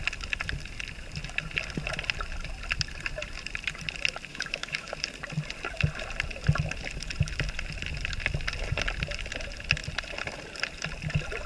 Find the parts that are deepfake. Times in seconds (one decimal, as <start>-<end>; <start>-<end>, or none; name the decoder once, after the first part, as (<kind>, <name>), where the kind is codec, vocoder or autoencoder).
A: 4.3-4.9 (autoencoder, DAC-VAE)